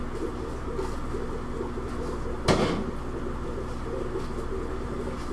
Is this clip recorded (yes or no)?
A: yes